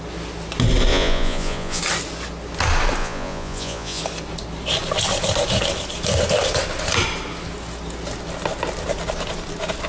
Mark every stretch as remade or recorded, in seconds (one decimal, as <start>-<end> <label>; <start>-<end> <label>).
0.0-0.9 recorded; 0.9-1.8 remade; 1.8-3.0 recorded; 3.0-4.0 remade; 4.0-9.9 recorded